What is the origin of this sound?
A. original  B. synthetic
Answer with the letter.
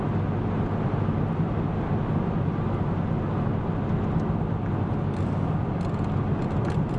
A